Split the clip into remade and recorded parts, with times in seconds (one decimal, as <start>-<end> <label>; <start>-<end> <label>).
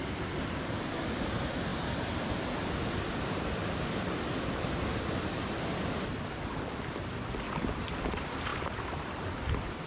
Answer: 0.0-9.9 recorded